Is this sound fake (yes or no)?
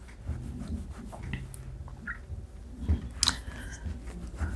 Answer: no